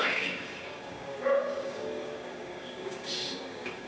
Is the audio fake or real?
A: fake